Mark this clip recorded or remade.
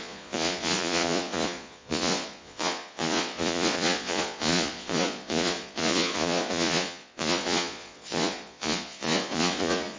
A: remade